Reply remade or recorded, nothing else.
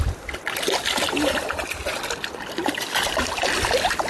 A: recorded